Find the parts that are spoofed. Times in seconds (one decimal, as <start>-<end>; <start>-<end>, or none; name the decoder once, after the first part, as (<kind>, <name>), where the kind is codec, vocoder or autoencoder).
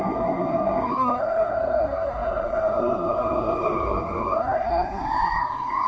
0.0-5.9 (codec, SNAC)